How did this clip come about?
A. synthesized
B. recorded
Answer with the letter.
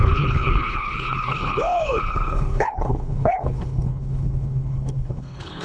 A